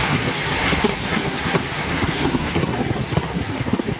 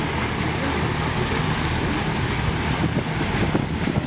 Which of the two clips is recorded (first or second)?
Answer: second